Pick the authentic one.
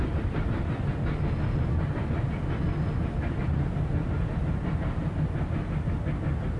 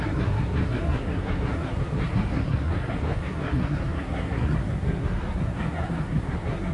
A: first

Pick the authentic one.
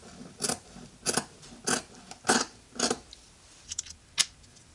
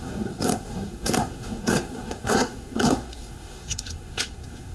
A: first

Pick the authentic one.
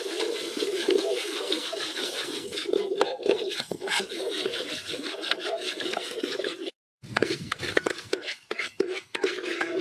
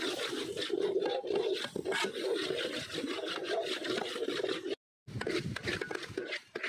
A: second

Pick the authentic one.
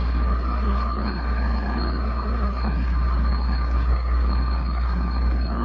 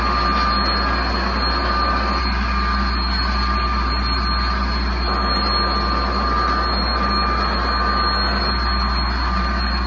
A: second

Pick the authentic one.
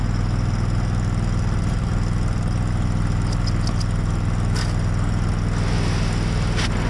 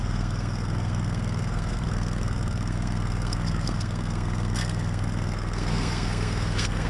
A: first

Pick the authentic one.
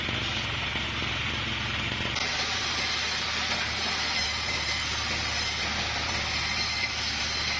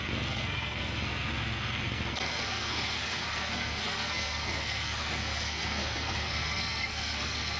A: first